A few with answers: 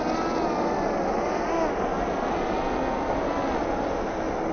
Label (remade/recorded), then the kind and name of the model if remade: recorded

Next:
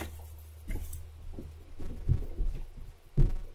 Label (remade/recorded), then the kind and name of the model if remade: recorded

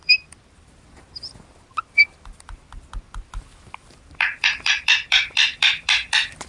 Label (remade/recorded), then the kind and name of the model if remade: remade, vocoder, BigVGAN v2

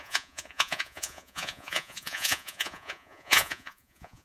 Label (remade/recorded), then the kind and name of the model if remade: remade, vocoder, Vocos